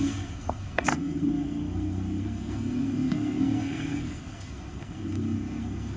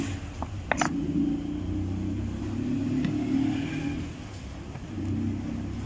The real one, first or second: second